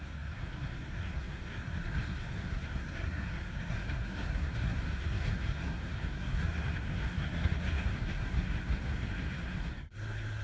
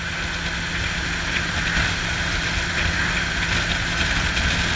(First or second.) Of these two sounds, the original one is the second